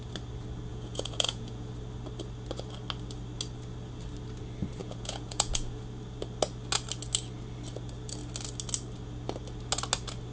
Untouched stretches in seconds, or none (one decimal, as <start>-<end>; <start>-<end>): 0.0-0.7; 1.7-4.8; 5.8-10.3